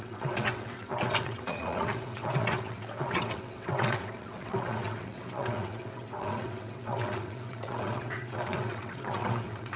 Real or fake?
fake